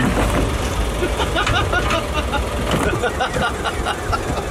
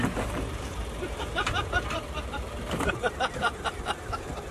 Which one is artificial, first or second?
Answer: second